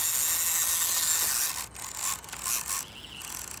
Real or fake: real